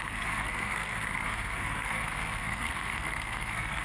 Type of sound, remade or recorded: remade